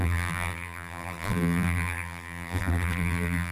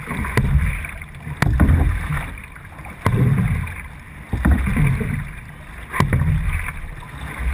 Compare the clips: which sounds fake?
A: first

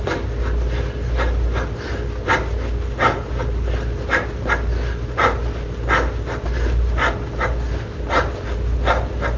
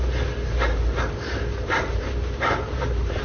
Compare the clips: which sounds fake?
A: second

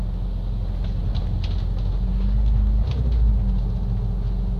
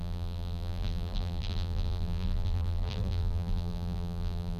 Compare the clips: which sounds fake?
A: second